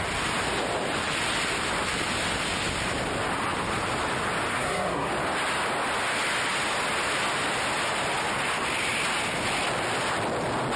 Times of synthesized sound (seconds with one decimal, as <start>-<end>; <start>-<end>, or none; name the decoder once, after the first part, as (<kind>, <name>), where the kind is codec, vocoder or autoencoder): 4.5-5.1 (codec, SNAC)